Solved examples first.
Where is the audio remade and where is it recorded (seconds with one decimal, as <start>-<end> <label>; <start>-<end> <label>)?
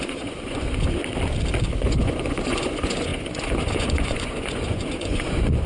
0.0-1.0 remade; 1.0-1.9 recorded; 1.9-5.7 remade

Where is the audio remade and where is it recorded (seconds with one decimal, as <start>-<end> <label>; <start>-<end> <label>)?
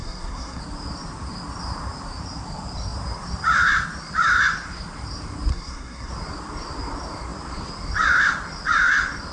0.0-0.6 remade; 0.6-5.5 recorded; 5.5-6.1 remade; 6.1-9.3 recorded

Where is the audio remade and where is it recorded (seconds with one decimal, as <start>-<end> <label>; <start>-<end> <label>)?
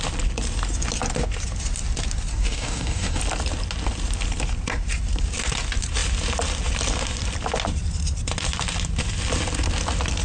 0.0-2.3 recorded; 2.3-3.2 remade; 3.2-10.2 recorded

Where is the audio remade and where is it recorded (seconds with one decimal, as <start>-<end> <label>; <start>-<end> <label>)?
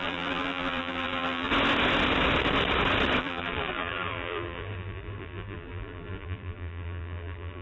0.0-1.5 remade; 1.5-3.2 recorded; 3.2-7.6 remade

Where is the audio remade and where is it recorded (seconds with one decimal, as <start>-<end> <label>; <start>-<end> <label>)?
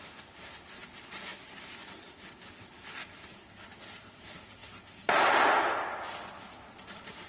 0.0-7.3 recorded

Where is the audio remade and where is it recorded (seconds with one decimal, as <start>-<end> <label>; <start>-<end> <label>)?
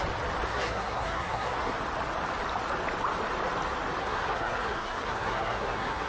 0.0-0.5 recorded; 0.5-1.8 remade; 1.8-4.0 recorded; 4.0-6.1 remade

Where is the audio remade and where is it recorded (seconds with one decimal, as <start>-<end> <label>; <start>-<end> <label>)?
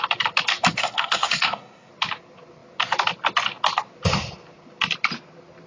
0.0-0.8 recorded; 0.8-1.9 remade; 1.9-5.7 recorded